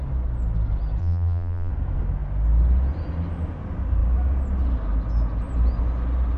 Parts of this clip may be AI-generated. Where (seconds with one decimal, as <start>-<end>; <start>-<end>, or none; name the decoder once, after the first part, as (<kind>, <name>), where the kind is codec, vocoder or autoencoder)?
1.0-1.7 (vocoder, BigVGAN v2)